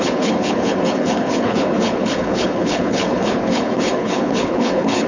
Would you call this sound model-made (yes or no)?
yes